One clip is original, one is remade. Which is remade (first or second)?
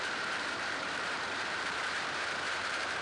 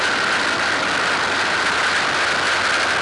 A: first